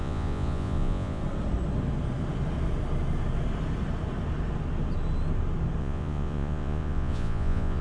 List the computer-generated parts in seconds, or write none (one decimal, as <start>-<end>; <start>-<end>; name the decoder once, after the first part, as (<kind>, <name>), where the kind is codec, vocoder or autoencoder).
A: 0.0-1.2 (vocoder, Vocos); 5.8-7.8